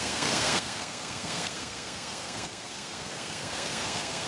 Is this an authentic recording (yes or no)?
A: no